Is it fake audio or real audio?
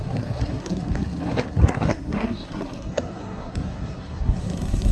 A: fake